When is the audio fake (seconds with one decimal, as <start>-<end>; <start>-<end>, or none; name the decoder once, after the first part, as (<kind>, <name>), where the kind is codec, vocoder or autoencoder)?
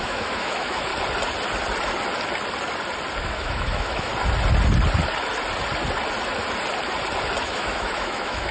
0.0-0.9 (autoencoder, DAC-VAE); 3.2-4.1; 7.4-8.5